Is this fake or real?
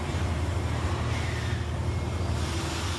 real